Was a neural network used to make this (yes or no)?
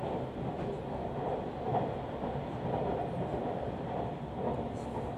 no